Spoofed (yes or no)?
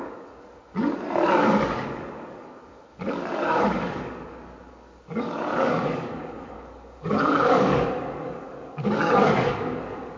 yes